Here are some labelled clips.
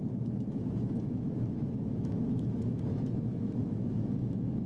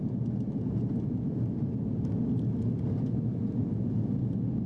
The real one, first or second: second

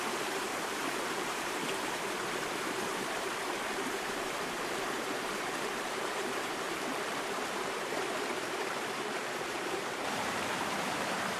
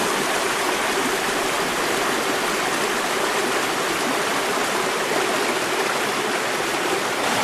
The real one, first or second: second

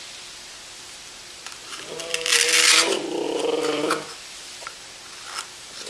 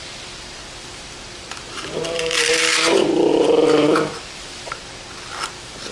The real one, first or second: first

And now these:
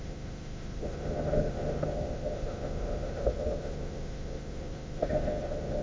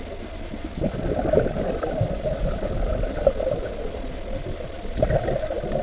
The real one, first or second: second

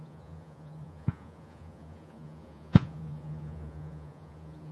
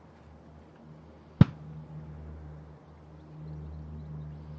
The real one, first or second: second